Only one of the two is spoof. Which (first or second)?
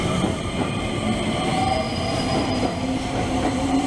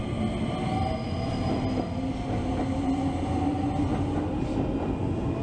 first